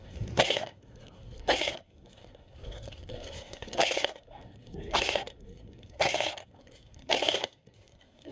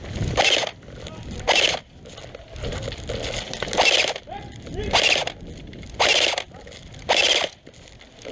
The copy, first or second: first